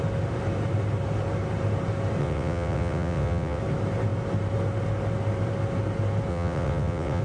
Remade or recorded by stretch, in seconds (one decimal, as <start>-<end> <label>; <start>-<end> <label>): 0.0-2.2 recorded; 2.2-3.6 remade; 3.6-6.3 recorded; 6.3-7.2 remade